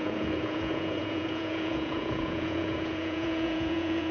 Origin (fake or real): fake